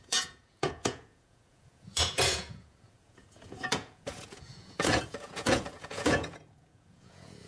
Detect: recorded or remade remade